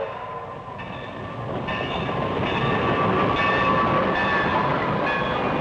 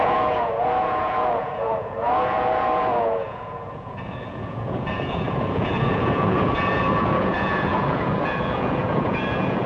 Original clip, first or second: first